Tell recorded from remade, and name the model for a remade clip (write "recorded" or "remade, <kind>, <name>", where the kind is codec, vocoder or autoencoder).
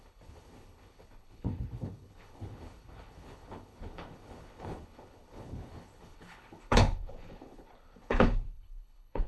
remade, codec, HILCodec